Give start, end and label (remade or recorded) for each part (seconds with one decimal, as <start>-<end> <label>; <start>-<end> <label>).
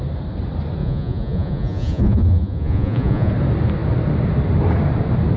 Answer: 0.0-0.8 recorded; 0.8-3.3 remade; 3.3-5.4 recorded